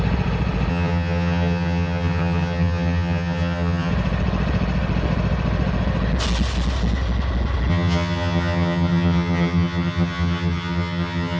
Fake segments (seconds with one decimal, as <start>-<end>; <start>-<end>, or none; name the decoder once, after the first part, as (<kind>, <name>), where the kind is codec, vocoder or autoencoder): 0.7-3.9 (vocoder, HiFi-GAN); 7.7-11.4